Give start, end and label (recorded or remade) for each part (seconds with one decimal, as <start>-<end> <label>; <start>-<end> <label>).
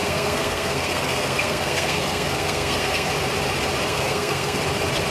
0.0-3.1 remade; 3.1-3.9 recorded; 3.9-4.6 remade; 4.6-5.1 recorded